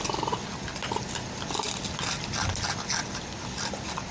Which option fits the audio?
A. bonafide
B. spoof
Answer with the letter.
A